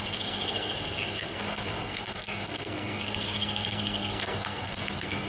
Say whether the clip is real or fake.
fake